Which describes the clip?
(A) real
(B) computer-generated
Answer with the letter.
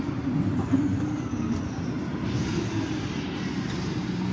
A